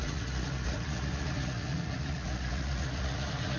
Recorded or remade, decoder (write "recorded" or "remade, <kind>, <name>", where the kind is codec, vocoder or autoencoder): remade, vocoder, Vocos